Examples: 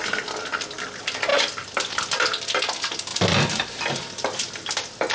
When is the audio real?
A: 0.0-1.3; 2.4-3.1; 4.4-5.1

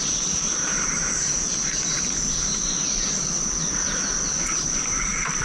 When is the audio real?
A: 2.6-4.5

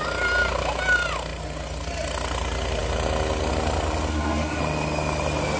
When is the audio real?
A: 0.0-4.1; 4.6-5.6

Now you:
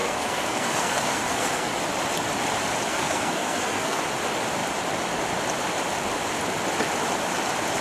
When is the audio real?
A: 1.7-2.9; 4.0-7.8